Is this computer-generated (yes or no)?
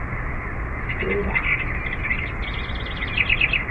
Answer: no